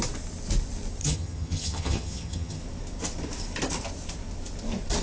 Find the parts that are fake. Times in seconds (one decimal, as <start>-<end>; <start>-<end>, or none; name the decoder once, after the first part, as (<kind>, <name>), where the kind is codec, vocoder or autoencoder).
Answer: 1.0-2.6 (vocoder, HiFi-GAN)